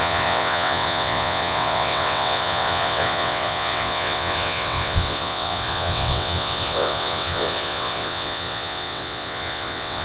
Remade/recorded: remade